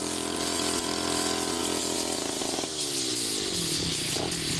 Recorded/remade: recorded